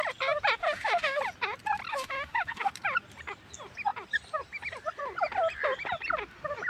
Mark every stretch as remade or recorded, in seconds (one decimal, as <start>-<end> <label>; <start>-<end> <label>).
0.0-0.6 recorded; 0.6-1.2 remade; 1.2-1.9 recorded; 1.9-2.7 remade; 2.7-6.7 recorded